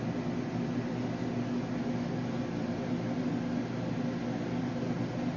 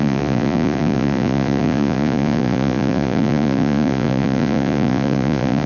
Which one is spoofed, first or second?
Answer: second